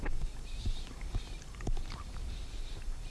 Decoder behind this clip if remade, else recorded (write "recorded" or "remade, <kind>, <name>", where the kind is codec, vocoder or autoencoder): recorded